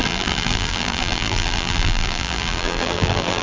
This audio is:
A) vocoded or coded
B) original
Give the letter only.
A